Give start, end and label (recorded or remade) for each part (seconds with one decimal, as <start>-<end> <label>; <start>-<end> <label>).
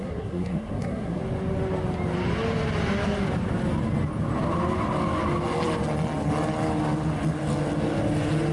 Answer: 0.0-1.2 remade; 1.2-8.5 recorded